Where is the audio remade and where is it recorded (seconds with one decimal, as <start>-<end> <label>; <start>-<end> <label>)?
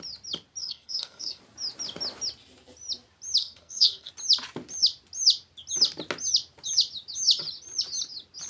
0.0-0.6 recorded; 0.6-1.4 remade; 1.4-3.4 recorded; 3.4-4.1 remade; 4.1-8.5 recorded